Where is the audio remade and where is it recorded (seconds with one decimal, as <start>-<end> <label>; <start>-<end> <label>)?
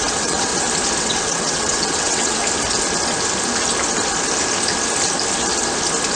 0.0-0.5 remade; 0.5-1.0 recorded; 1.0-2.4 remade; 2.4-6.2 recorded